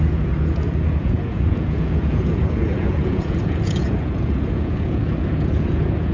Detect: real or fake fake